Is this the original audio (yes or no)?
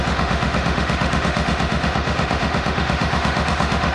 no